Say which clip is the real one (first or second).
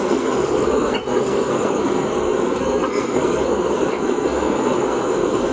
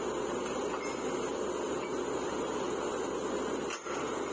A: second